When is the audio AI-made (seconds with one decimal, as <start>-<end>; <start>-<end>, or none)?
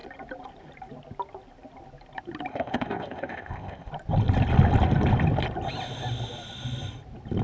2.5-3.9